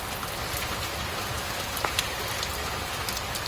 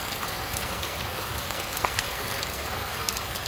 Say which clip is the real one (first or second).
first